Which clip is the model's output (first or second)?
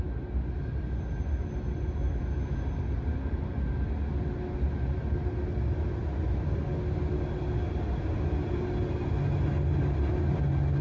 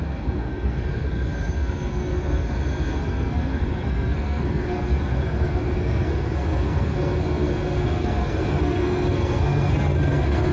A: second